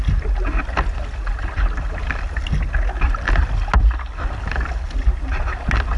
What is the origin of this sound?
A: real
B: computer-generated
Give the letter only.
A